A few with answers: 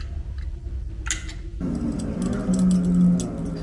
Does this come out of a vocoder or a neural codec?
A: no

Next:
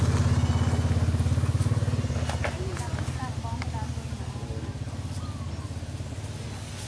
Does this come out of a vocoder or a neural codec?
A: no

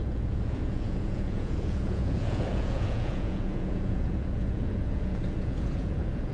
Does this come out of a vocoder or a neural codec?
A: yes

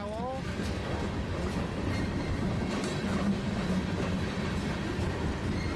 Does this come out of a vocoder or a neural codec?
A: no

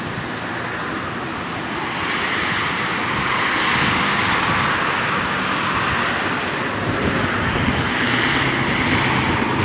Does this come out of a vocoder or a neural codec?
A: no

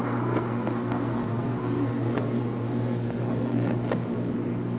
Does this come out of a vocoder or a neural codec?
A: yes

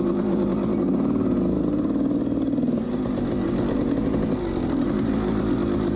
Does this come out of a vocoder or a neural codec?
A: no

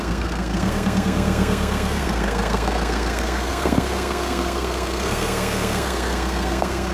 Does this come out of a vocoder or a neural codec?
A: yes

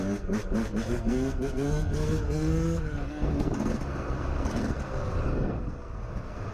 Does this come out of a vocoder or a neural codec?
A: yes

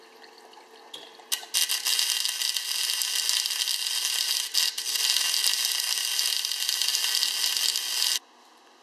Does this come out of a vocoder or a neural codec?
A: no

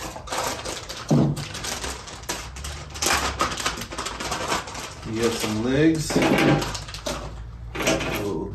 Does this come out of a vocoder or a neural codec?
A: no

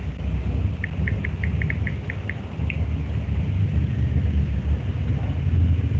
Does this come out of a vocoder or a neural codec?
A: no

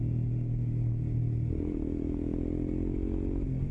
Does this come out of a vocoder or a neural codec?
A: no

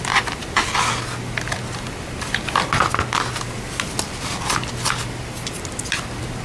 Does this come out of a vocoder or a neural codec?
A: no